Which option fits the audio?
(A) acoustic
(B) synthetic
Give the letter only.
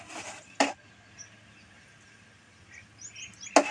A